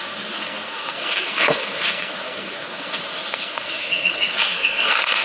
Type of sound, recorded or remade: remade